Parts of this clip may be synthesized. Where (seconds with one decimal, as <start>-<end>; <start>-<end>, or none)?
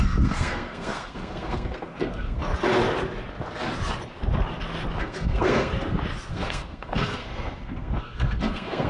0.0-2.5; 5.0-5.7; 6.3-8.9